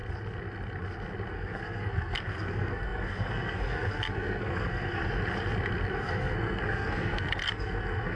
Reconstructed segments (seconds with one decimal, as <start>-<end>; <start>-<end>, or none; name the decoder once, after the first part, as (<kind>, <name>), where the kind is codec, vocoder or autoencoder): 1.3-5.0 (codec, SNAC); 5.9-8.2